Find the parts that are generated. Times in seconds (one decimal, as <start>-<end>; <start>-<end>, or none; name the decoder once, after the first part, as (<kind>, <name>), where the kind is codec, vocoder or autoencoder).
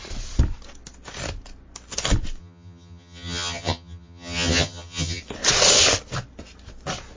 2.4-5.2 (vocoder, HiFi-GAN)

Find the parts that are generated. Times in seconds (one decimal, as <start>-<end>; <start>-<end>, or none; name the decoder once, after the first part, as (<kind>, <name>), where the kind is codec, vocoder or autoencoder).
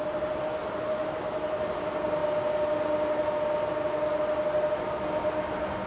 none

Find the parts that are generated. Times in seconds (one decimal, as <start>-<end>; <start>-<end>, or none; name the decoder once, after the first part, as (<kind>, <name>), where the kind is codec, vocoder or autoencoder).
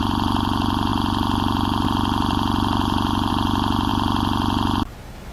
none